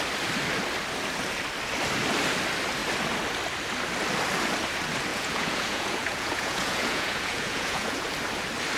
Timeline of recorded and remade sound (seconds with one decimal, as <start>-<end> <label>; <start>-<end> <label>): 0.0-5.1 recorded; 5.1-8.1 remade; 8.1-8.8 recorded